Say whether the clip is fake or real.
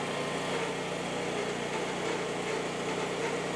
real